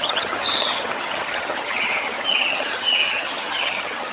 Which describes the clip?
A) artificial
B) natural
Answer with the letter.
A